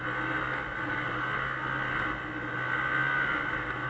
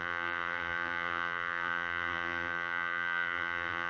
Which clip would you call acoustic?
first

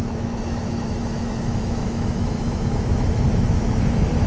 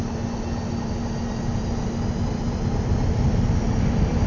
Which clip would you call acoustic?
second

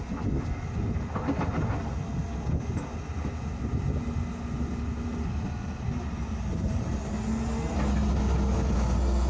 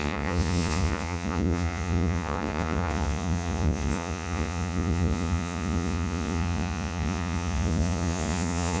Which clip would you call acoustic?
first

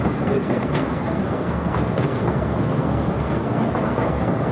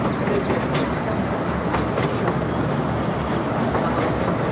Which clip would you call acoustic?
second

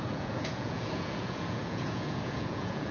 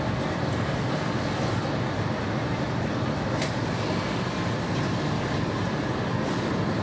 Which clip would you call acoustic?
second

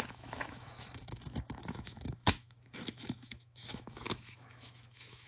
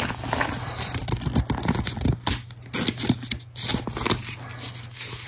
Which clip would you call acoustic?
second